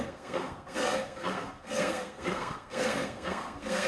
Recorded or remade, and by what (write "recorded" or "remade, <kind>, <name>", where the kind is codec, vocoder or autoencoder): remade, codec, SNAC